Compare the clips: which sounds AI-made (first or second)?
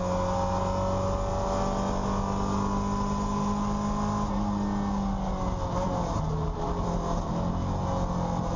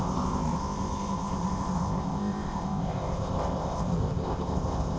second